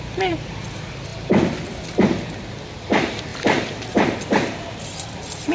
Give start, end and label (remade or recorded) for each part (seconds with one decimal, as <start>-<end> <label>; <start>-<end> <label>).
0.0-5.5 recorded